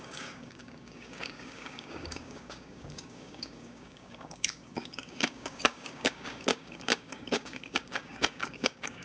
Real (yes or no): no